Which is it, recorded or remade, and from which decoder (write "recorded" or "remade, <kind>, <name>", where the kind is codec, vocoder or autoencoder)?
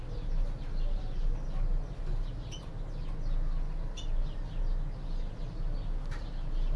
recorded